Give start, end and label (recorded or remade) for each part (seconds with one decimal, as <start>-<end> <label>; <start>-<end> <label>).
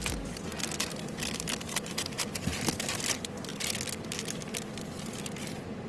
0.0-5.9 recorded